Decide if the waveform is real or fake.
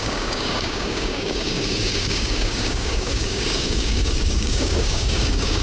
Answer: fake